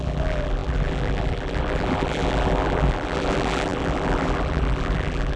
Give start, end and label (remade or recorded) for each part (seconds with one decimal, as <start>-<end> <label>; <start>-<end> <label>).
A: 0.0-5.4 remade